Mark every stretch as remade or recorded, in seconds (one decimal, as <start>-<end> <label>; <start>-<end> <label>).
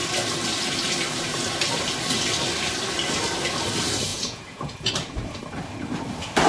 0.0-4.1 recorded; 4.1-4.9 remade; 4.9-6.5 recorded